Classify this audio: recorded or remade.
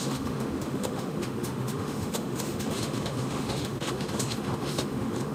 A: remade